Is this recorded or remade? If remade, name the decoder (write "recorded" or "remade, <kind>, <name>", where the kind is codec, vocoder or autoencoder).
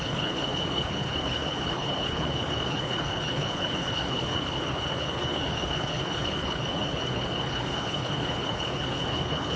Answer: remade, codec, HILCodec